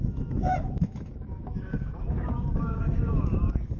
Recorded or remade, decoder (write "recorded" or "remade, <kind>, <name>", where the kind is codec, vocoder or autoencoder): remade, autoencoder, DAC-VAE